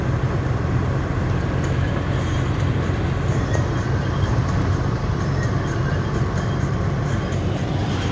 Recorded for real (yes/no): yes